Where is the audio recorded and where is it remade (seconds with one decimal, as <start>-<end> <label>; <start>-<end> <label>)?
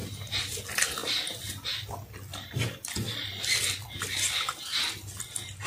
0.0-0.6 remade; 0.6-5.7 recorded